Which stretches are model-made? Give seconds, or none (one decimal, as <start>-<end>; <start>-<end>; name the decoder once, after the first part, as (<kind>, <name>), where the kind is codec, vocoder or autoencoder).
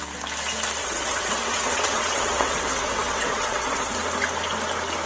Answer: 0.8-3.9 (vocoder, WaveNeXt)